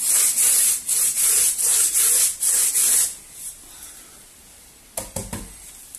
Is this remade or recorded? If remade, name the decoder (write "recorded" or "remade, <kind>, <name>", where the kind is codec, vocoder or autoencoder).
recorded